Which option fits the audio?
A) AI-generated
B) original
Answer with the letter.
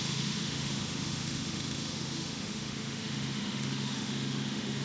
A